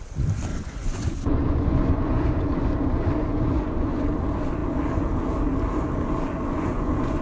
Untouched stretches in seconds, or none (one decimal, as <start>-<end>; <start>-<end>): 0.0-0.5; 2.5-3.2; 4.0-6.5